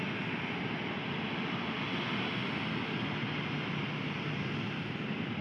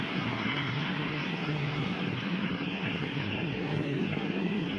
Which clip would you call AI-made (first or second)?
second